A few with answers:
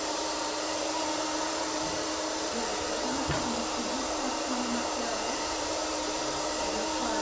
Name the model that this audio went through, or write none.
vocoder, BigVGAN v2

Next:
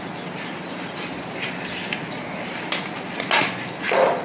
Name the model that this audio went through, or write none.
none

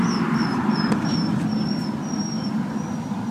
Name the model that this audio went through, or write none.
none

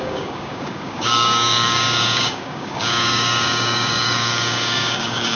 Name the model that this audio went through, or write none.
codec, DAC